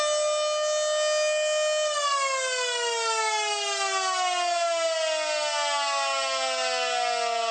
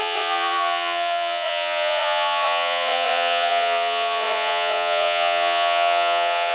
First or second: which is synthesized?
second